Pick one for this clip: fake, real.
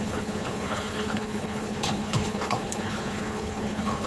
fake